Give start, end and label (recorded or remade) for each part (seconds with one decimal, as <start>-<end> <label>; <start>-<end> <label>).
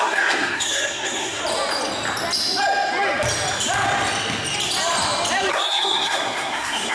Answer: 0.0-1.4 remade; 1.4-5.5 recorded; 5.5-6.9 remade